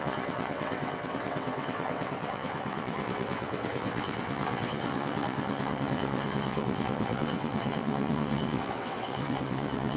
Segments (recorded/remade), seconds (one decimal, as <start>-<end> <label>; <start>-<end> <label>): 0.0-10.0 remade